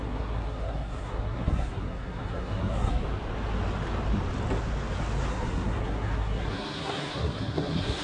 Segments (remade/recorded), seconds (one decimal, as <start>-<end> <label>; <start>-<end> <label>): 0.0-3.0 remade; 3.0-5.3 recorded; 5.3-8.0 remade